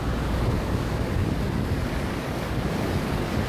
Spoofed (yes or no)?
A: yes